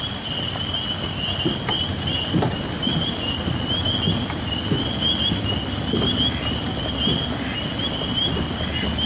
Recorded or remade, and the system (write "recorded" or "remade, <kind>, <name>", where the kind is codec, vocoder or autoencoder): recorded